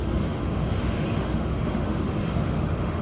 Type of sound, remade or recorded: remade